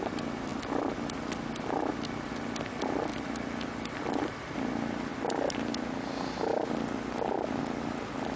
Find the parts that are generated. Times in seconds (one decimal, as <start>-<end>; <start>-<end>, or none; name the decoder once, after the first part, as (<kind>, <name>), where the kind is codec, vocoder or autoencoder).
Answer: none